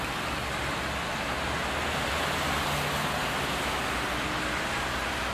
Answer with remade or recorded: recorded